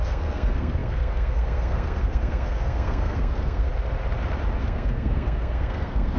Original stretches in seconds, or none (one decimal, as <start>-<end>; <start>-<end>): 3.7-4.6